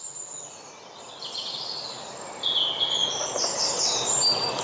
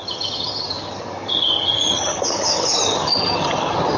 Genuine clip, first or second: first